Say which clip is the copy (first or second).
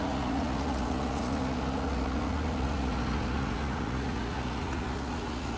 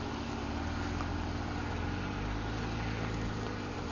first